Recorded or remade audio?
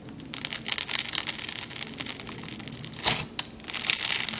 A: recorded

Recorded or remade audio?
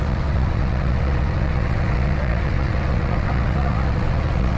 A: remade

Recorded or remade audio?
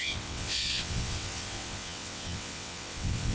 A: remade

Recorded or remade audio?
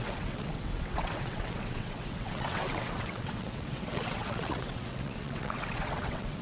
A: remade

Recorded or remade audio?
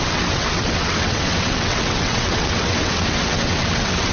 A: remade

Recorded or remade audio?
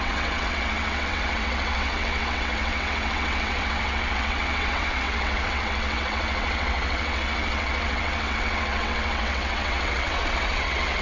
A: remade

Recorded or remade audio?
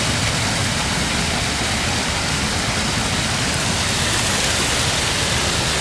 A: recorded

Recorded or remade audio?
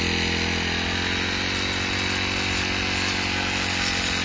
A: recorded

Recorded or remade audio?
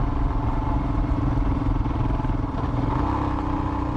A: recorded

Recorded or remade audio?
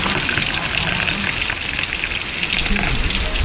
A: recorded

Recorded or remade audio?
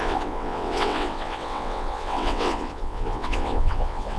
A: remade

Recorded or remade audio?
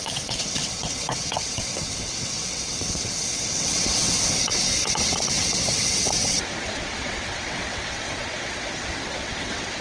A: remade